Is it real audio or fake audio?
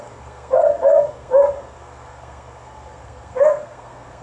fake